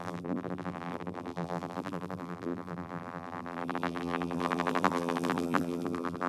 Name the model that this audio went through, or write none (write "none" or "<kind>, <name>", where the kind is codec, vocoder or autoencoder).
vocoder, BigVGAN v2